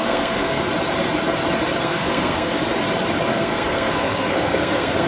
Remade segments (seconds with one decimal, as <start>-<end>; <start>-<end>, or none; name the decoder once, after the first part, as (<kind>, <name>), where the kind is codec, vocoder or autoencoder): 0.0-0.7 (codec, SNAC); 1.8-2.6; 3.3-5.1